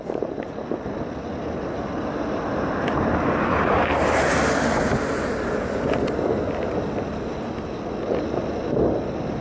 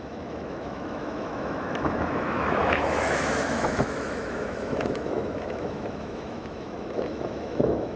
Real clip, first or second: first